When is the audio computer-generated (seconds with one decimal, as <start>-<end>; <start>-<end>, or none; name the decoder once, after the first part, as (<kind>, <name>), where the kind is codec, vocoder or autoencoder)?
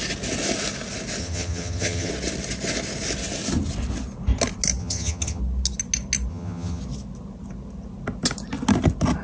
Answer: 1.2-2.1 (vocoder, HiFi-GAN); 4.8-5.4; 6.3-6.8